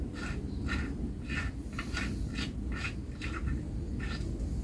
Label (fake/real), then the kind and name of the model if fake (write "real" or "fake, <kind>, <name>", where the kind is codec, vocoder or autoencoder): real